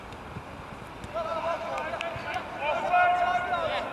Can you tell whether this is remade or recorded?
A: recorded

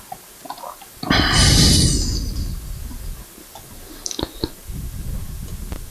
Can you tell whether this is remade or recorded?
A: recorded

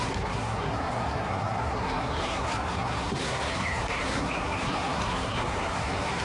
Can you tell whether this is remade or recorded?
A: remade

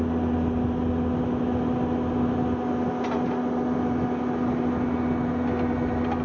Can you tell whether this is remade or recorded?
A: recorded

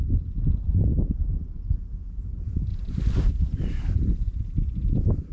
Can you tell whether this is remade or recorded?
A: recorded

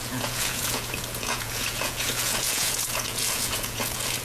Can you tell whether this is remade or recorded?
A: remade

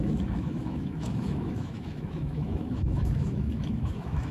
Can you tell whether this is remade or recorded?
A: remade